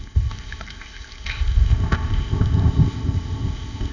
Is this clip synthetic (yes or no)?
yes